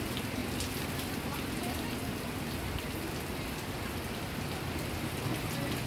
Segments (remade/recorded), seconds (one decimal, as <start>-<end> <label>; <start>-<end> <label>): 0.0-5.9 recorded